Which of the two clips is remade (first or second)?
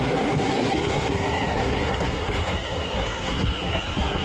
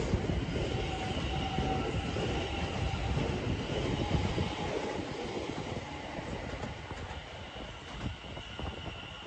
first